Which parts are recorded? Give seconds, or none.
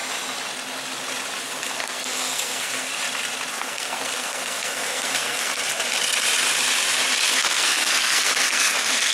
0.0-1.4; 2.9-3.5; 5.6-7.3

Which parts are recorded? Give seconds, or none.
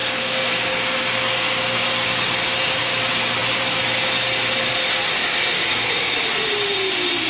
3.0-5.1; 6.2-7.3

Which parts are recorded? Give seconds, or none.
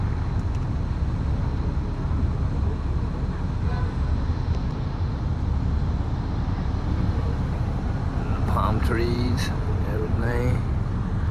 0.0-3.7; 5.3-8.3; 10.4-11.3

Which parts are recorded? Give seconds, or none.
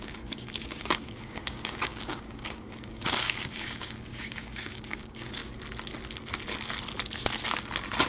5.4-8.1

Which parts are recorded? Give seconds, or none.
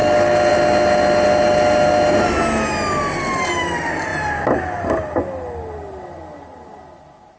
0.0-7.4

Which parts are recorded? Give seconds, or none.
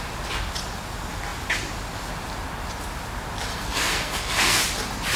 0.0-3.5; 4.6-5.2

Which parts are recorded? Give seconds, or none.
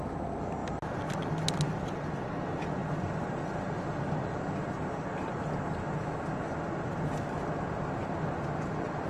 0.0-9.1